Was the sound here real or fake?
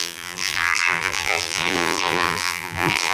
fake